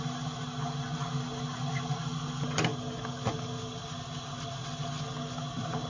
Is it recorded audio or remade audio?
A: recorded